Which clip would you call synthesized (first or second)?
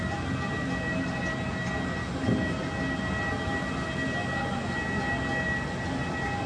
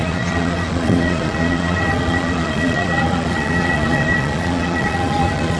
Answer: second